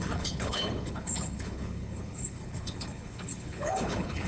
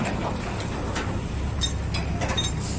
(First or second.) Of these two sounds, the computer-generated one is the first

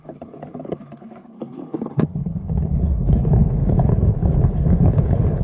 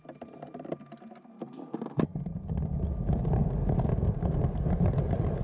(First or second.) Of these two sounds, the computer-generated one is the first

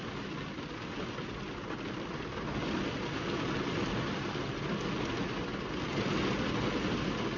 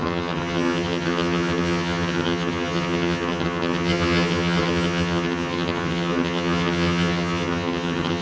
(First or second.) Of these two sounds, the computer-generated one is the second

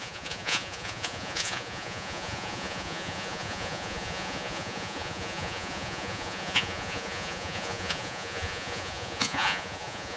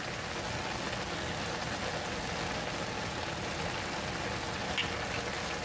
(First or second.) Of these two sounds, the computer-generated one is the first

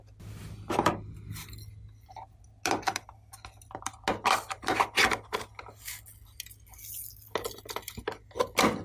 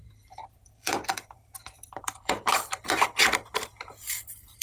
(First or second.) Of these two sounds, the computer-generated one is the second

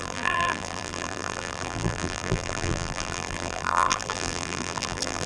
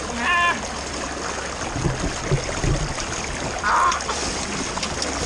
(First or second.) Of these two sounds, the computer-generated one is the first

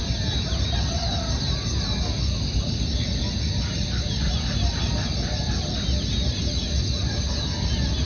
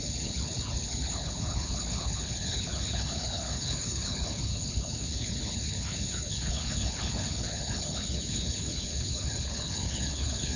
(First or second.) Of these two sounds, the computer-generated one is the second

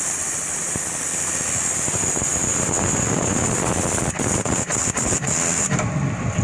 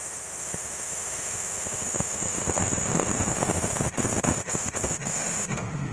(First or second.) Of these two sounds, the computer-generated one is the second